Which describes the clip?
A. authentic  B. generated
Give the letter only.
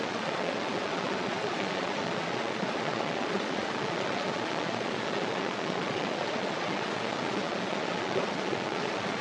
B